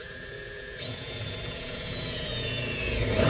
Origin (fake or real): fake